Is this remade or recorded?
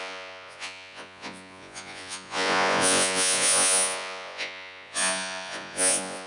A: remade